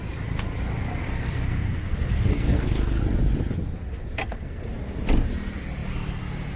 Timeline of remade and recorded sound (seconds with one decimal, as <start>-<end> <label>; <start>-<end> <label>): 0.0-1.0 recorded; 1.0-3.0 remade; 3.0-4.2 recorded; 4.2-4.7 remade; 4.7-6.6 recorded